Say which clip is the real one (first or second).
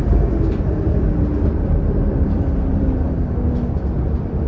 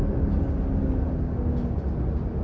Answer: second